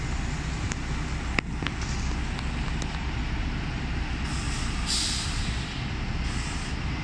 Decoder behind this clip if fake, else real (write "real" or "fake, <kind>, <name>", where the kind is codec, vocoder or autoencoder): real